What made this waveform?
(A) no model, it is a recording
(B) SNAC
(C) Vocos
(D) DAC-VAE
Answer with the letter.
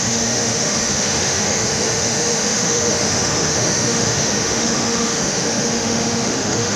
D